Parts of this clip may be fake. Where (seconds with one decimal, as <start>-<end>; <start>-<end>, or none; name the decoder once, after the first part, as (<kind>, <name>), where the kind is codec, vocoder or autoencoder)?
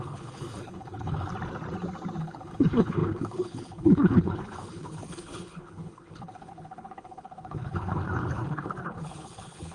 0.0-1.3 (codec, HILCodec); 2.2-9.7